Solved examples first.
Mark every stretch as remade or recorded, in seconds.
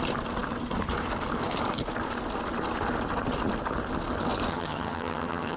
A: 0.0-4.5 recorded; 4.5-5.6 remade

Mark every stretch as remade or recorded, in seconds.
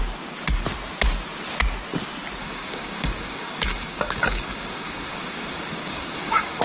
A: 0.0-2.4 recorded; 2.4-6.6 remade